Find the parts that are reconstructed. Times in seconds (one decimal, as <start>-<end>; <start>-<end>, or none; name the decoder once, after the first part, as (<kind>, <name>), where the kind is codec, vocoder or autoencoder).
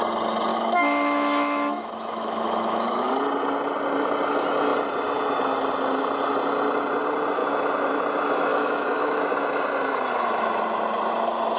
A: 0.5-3.1 (autoencoder, DAC-VAE); 8.5-9.2